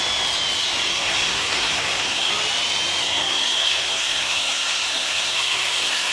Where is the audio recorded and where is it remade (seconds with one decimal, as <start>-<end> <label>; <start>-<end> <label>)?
0.0-0.9 recorded; 0.9-2.3 remade; 2.3-3.0 recorded; 3.0-6.1 remade